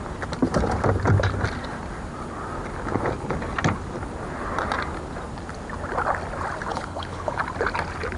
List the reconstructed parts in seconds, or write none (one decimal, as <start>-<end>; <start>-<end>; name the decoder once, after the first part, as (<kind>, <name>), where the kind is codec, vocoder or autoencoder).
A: 6.7-7.4 (codec, HILCodec)